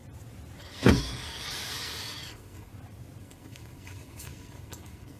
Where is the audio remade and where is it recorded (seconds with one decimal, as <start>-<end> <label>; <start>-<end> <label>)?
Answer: 0.0-0.6 recorded; 0.6-2.7 remade; 2.7-3.2 recorded; 3.2-5.2 remade

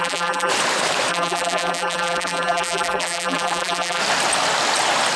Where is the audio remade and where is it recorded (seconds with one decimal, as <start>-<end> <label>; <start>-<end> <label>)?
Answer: 0.0-0.5 remade; 0.5-1.1 recorded; 1.1-4.0 remade; 4.0-5.2 recorded

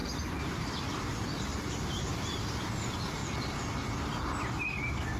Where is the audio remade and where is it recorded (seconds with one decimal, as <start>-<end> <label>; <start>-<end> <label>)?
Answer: 0.0-5.2 remade

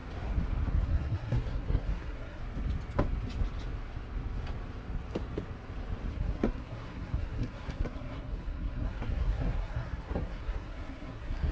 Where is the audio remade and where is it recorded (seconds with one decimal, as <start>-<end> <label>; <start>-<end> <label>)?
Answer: 0.0-0.7 recorded; 0.7-2.4 remade; 2.4-6.1 recorded; 6.1-11.5 remade

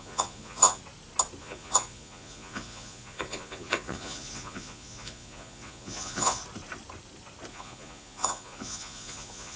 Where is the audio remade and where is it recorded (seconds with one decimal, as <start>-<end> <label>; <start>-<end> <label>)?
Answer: 0.0-0.8 remade; 0.8-1.4 recorded; 1.4-6.4 remade; 6.4-7.5 recorded; 7.5-9.6 remade

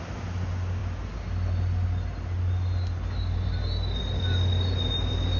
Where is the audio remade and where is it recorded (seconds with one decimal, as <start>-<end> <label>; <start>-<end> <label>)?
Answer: 0.0-5.4 recorded